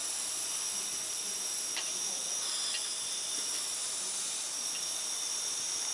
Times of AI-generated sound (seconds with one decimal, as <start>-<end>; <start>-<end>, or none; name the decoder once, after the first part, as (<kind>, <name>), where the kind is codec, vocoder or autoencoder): 3.8-4.4 (vocoder, BigVGAN v2)